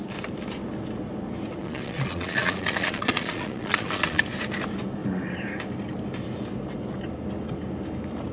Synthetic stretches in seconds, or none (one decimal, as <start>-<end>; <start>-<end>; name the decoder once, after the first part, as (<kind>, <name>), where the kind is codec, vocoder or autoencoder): 1.6-4.2 (vocoder, Vocos)